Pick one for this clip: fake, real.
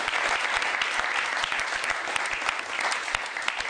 real